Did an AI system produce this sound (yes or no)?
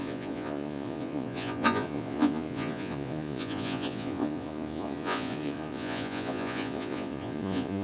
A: yes